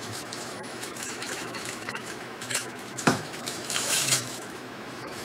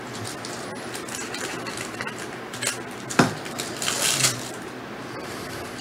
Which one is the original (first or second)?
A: second